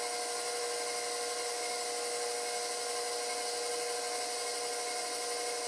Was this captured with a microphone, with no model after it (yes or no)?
yes